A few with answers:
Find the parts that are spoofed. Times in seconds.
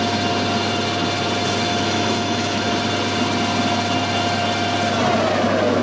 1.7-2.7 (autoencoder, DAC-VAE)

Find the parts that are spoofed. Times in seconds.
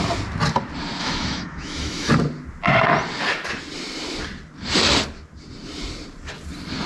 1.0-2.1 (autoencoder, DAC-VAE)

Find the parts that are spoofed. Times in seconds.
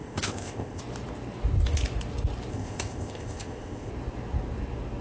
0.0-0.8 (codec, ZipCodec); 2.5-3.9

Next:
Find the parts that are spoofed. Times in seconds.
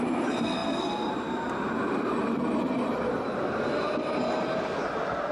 none